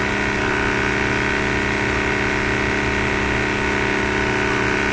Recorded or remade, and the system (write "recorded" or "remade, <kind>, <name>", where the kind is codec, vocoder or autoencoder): recorded